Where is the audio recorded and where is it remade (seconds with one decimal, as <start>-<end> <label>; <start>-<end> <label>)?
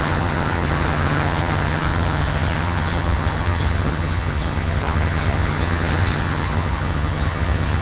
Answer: 0.0-7.8 remade